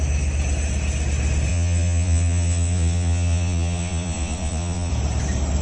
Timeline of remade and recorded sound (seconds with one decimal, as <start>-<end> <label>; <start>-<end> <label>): 0.0-1.5 recorded; 1.5-4.9 remade; 4.9-5.6 recorded